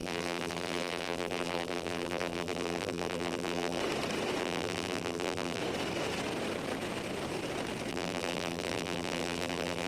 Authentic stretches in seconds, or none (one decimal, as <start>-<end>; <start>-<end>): 3.8-4.4; 5.6-7.9